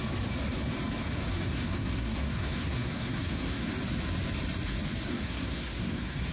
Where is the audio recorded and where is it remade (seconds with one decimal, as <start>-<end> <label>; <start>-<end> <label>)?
0.0-1.3 recorded; 1.3-3.7 remade; 3.7-5.1 recorded; 5.1-6.3 remade